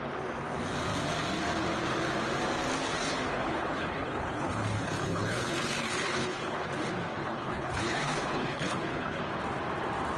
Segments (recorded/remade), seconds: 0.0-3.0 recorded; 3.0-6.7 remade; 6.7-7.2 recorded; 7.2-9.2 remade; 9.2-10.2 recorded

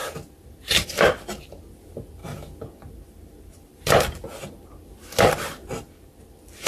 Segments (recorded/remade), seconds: 0.0-1.4 remade; 1.4-2.2 recorded; 2.2-6.2 remade; 6.2-6.7 recorded

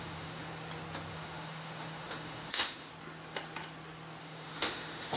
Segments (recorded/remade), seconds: 0.0-0.5 remade; 0.5-1.1 recorded; 1.1-2.9 remade; 2.9-4.2 recorded; 4.2-5.2 remade